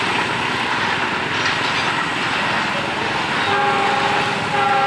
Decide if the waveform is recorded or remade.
recorded